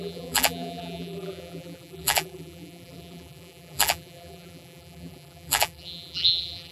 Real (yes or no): no